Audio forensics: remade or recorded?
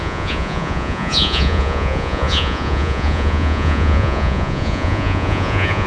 remade